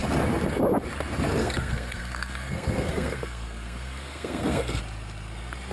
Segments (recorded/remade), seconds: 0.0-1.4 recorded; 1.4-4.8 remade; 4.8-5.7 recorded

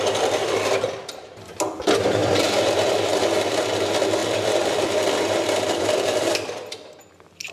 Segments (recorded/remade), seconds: 0.0-2.2 recorded; 2.2-2.9 remade; 2.9-4.2 recorded; 4.2-7.0 remade; 7.0-7.5 recorded